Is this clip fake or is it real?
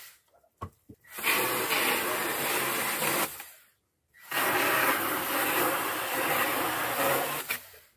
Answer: fake